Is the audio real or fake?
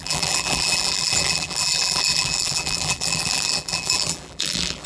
fake